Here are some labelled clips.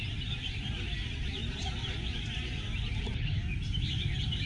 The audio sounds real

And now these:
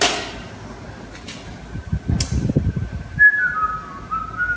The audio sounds real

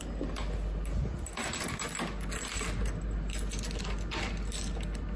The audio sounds real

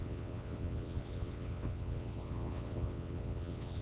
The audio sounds fake